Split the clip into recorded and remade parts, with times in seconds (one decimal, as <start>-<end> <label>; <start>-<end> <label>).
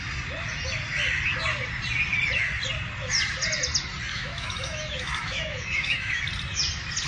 0.0-4.1 recorded; 4.1-6.2 remade; 6.2-7.1 recorded